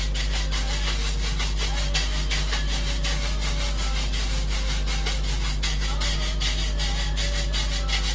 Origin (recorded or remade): recorded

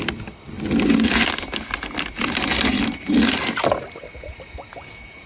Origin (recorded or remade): recorded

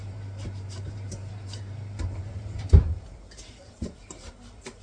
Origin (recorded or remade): remade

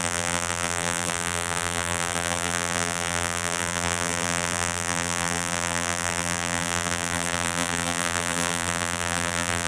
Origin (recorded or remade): remade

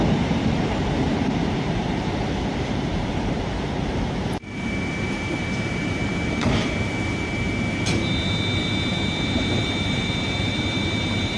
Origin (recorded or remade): remade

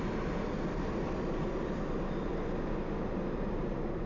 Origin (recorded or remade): recorded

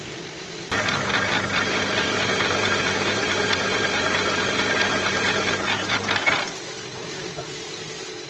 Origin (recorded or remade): recorded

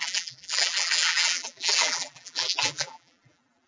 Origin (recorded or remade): remade